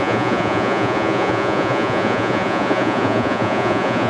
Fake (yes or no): yes